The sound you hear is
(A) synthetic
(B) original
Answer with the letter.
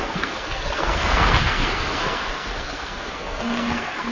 A